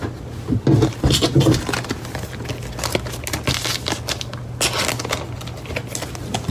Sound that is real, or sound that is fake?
real